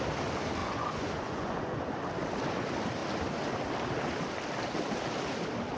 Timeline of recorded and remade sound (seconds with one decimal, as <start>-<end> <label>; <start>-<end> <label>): 0.0-0.6 recorded; 0.6-1.8 remade; 1.8-5.8 recorded